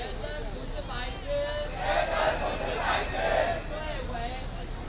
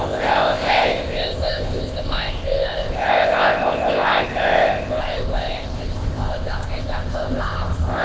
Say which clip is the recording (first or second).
first